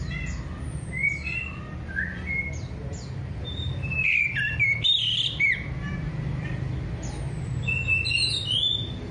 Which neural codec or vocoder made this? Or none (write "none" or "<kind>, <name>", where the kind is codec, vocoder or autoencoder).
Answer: none